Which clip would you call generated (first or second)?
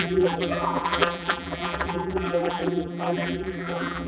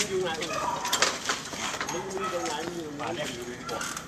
first